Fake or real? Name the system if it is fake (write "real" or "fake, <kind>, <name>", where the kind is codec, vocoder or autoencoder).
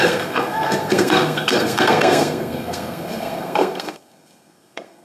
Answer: fake, codec, SNAC